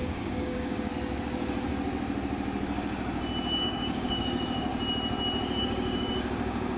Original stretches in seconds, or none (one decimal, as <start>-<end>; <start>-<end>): 0.9-3.6; 4.7-5.6

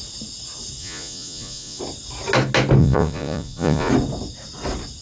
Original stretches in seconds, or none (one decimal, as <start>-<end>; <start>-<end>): 0.0-0.8; 1.8-2.8; 3.9-5.0

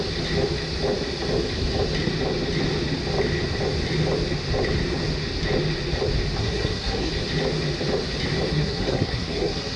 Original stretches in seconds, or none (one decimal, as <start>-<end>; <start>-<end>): 0.0-6.4; 7.1-8.5

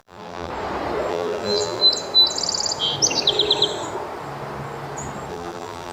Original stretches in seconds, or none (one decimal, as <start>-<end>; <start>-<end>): 0.5-1.1; 1.8-5.3

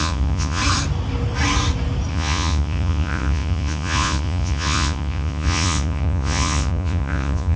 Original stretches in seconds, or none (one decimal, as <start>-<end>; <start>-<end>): 0.6-2.1

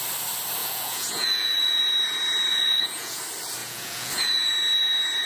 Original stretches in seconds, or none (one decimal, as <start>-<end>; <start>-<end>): 0.0-0.6; 1.8-2.5; 3.2-3.6; 4.5-5.3